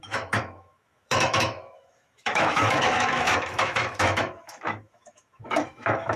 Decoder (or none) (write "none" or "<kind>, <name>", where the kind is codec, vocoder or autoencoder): autoencoder, DAC-VAE